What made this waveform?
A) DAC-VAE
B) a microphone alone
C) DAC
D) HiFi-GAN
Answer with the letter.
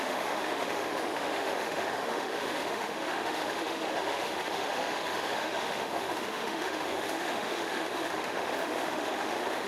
A